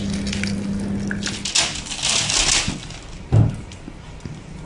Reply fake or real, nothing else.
real